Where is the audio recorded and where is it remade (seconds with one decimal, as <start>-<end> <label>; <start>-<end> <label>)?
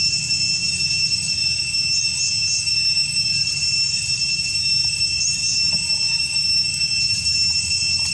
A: 0.0-0.6 recorded; 0.6-1.6 remade; 1.6-3.0 recorded; 3.0-5.2 remade; 5.2-8.1 recorded